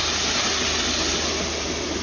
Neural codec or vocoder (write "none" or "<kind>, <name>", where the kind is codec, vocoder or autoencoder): none